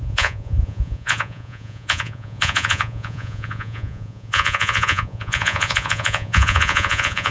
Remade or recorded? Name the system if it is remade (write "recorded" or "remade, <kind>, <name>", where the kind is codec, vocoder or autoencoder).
remade, vocoder, Vocos